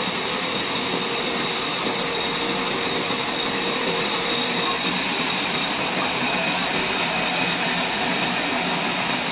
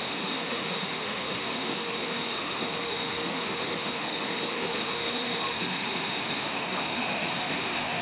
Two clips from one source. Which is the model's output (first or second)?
second